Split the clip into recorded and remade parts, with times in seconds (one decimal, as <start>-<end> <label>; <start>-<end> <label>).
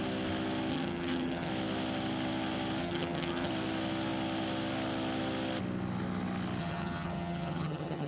0.0-0.7 recorded; 0.7-1.5 remade; 1.5-2.8 recorded; 2.8-3.5 remade; 3.5-6.6 recorded; 6.6-8.1 remade